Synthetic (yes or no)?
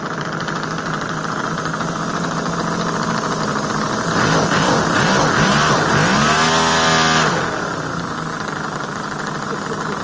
no